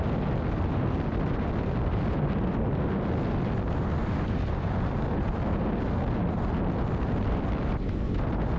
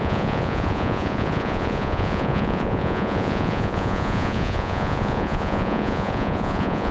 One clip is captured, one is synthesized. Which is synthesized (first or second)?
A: second